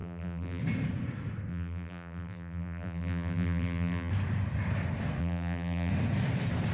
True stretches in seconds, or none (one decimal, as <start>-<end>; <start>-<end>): 0.6-1.5; 4.1-5.2; 5.9-6.7